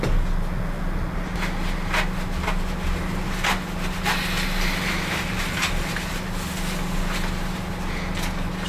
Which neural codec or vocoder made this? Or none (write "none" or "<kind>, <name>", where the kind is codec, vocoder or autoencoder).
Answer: none